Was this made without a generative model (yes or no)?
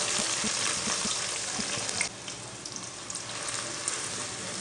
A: yes